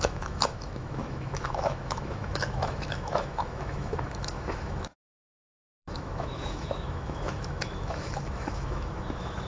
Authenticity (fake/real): fake